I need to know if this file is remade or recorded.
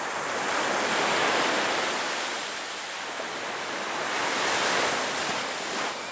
recorded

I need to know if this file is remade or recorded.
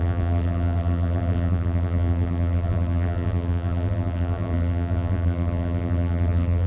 remade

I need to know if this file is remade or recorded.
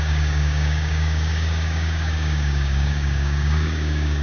remade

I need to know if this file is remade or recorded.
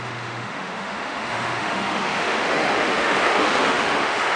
remade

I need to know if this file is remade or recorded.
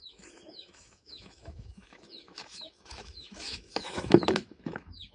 remade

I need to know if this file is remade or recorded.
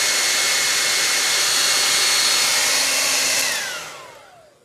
recorded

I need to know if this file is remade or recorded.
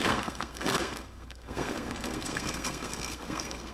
remade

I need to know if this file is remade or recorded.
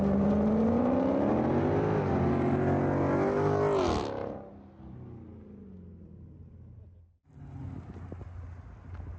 recorded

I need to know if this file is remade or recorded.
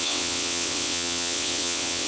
remade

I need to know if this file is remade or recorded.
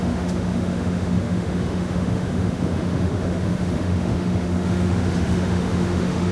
remade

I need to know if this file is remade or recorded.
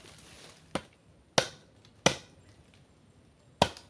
recorded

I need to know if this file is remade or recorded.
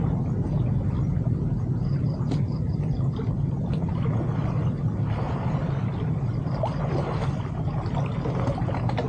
recorded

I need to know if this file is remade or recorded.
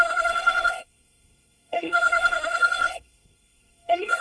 remade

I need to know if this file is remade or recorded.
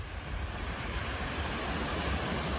recorded